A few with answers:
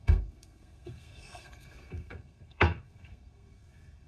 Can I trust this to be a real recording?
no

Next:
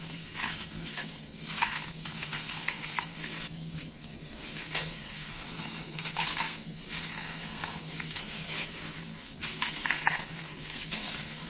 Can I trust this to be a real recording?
no